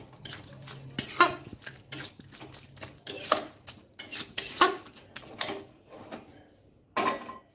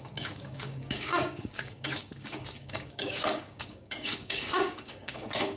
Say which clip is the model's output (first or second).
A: second